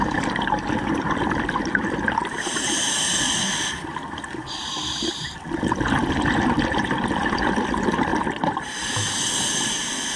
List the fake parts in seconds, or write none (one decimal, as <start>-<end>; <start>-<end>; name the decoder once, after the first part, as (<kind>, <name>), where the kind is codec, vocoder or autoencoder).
0.0-8.1 (vocoder, BigVGAN v2); 9.4-10.2